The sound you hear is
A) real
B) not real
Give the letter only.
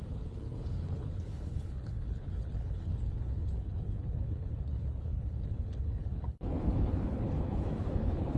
B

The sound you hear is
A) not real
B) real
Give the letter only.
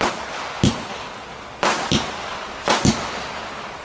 B